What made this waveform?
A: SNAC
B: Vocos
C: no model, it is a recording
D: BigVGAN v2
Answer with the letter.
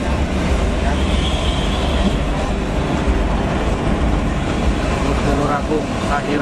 D